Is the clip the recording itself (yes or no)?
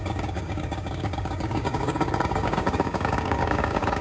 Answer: no